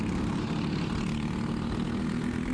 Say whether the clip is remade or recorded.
recorded